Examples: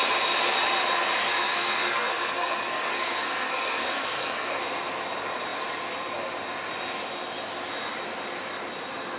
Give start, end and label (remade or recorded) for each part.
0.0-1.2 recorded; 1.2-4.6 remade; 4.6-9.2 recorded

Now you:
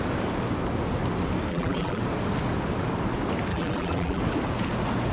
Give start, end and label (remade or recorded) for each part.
0.0-1.5 recorded; 1.5-2.0 remade; 2.0-3.5 recorded; 3.5-4.2 remade; 4.2-5.1 recorded

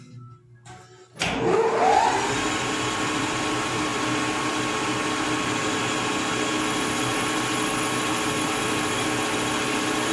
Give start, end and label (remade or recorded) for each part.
0.0-10.1 recorded

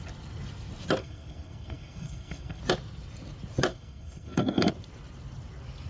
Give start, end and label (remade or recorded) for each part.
0.0-1.0 recorded; 1.0-2.6 remade; 2.6-3.7 recorded; 3.7-4.7 remade; 4.7-5.9 recorded

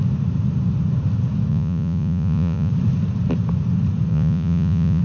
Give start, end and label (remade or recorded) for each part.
0.0-1.5 recorded; 1.5-2.7 remade; 2.7-4.1 recorded; 4.1-5.0 remade

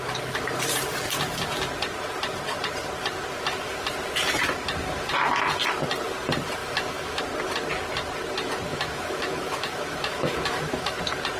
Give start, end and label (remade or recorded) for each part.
0.0-6.6 recorded; 6.6-7.2 remade; 7.2-8.7 recorded; 8.7-11.0 remade; 11.0-11.4 recorded